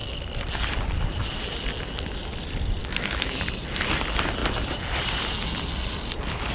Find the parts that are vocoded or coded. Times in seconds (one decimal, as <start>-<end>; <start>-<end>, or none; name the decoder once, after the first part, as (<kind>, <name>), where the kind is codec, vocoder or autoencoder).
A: 2.8-3.4 (autoencoder, DAC-VAE)